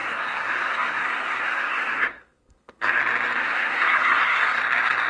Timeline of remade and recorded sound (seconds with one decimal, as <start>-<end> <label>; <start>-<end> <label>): 0.0-3.0 remade; 3.0-3.4 recorded; 3.4-4.6 remade; 4.6-5.1 recorded